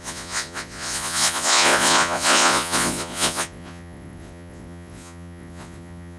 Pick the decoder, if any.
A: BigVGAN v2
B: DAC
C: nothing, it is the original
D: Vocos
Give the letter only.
D